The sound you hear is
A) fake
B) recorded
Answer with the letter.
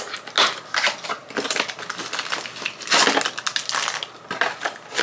B